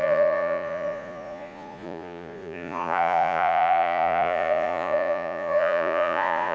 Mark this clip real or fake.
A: fake